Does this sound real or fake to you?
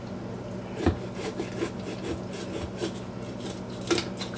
real